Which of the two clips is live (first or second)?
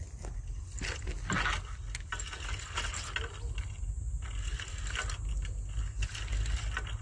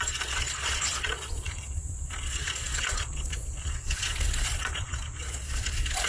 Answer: first